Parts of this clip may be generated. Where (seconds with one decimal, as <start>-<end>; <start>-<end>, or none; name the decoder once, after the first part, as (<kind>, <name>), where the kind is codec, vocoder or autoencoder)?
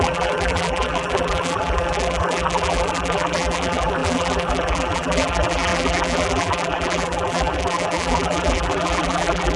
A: 0.0-9.6 (vocoder, BigVGAN v2)